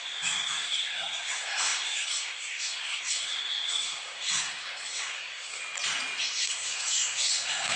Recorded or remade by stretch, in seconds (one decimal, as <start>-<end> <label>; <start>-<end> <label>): 0.0-5.6 remade; 5.6-6.2 recorded; 6.2-7.8 remade